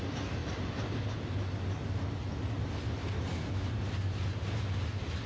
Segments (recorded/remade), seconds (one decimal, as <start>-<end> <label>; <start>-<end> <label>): 0.0-5.3 recorded